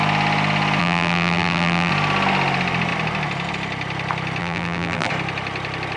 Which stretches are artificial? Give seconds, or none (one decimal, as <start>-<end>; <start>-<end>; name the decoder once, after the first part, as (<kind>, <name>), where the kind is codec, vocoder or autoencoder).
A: 0.8-1.9 (vocoder, BigVGAN v2); 4.4-5.1